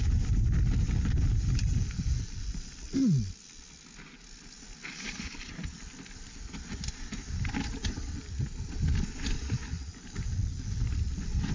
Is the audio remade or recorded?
recorded